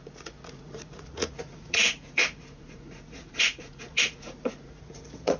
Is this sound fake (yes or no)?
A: yes